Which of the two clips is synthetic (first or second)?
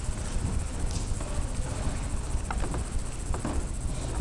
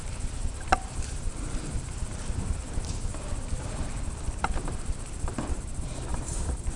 second